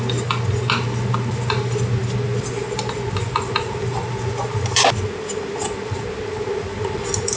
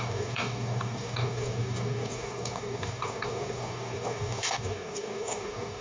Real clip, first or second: first